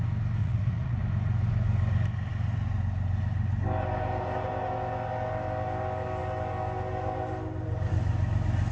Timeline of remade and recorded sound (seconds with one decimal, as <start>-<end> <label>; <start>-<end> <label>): 0.0-0.4 recorded; 0.4-1.0 remade; 1.0-8.7 recorded